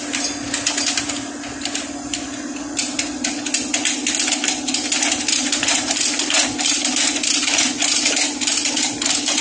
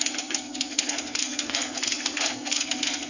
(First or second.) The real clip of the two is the first